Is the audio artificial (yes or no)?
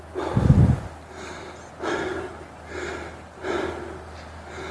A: no